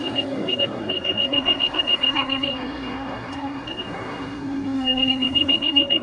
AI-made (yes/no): yes